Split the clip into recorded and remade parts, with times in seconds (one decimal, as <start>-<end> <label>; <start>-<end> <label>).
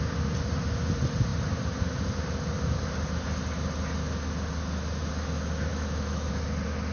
0.0-5.7 recorded; 5.7-6.3 remade; 6.3-6.9 recorded